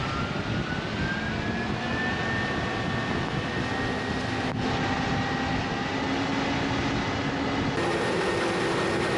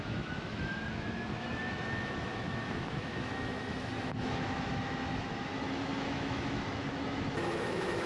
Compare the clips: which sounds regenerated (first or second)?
second